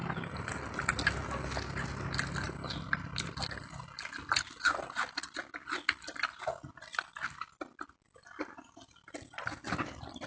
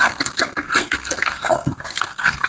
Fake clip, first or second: second